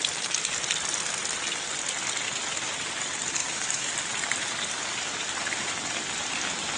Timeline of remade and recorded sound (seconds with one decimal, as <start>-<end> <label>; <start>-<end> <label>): 0.0-3.4 recorded; 3.4-3.9 remade; 3.9-6.8 recorded